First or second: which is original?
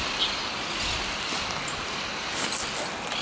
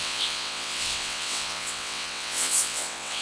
first